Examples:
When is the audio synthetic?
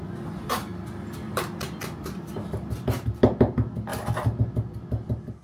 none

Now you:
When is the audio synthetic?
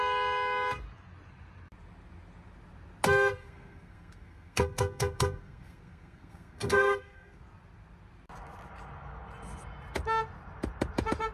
3.4-7.4 (codec, SNAC)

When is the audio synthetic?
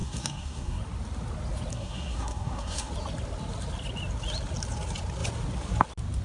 0.0-0.8 (codec, SNAC); 1.7-2.9